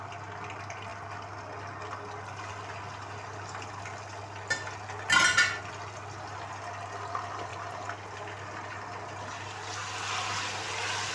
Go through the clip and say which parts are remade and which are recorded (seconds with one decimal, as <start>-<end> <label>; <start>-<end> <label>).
0.0-11.1 recorded